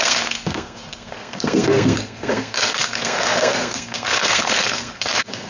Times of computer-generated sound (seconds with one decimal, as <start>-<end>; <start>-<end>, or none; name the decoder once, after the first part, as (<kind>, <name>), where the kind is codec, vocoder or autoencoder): 0.0-5.5 (codec, SNAC)